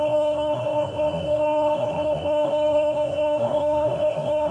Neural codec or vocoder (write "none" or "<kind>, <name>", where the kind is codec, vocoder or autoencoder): codec, SNAC